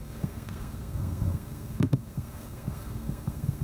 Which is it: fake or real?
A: fake